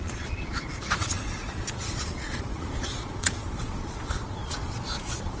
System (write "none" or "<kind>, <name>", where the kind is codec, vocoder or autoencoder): vocoder, Vocos